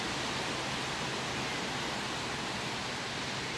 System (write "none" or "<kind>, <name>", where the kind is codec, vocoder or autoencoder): none